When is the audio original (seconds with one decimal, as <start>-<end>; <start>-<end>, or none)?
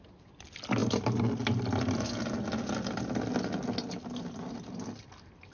0.0-5.5